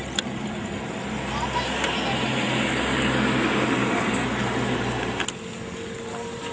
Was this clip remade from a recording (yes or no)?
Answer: no